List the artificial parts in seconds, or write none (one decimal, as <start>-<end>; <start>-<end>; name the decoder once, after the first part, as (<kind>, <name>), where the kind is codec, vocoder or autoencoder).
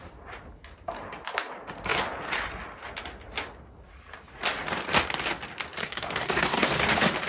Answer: 5.8-6.7 (codec, SNAC)